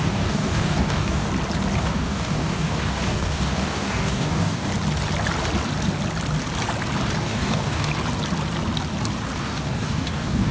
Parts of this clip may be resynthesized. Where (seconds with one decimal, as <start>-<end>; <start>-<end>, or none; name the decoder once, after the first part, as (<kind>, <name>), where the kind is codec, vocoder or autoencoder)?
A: 0.0-1.3 (codec, DAC); 1.8-4.7; 7.2-7.9; 9.4-10.5